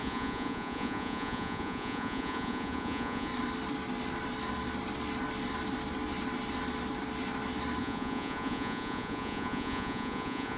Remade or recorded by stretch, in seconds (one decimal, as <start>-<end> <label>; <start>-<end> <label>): 0.0-3.3 remade; 3.3-7.8 recorded; 7.8-10.6 remade